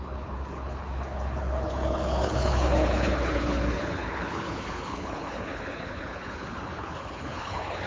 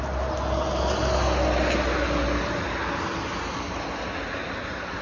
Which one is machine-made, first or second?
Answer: first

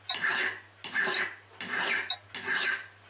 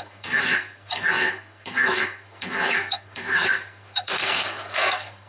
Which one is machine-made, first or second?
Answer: second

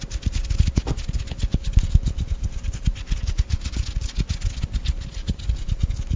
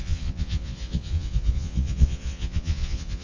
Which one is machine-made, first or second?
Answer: second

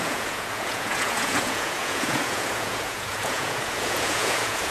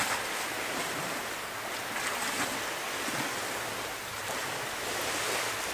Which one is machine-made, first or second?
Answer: first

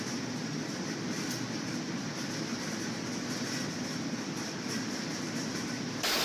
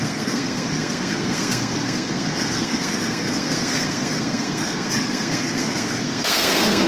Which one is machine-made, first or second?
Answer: second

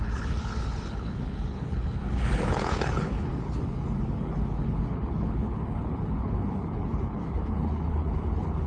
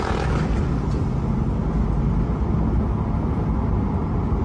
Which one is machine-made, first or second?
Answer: first